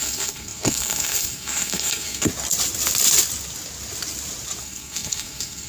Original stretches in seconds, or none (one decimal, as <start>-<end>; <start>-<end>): 2.3-4.6